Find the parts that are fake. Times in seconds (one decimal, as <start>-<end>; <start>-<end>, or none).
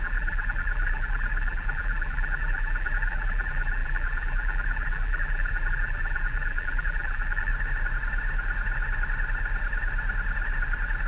0.0-7.5